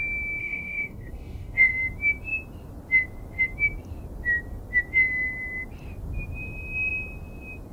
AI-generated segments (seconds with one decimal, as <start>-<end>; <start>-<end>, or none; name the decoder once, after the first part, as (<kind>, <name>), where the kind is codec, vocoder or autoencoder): 0.4-1.7 (codec, DAC)